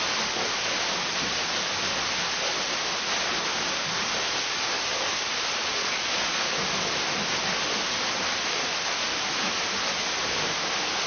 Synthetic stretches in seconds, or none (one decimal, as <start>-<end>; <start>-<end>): 5.6-6.4